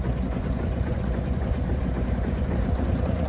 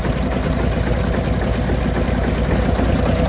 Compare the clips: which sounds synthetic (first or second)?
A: first